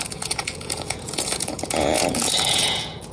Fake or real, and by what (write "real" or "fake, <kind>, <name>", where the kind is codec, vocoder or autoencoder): fake, vocoder, Vocos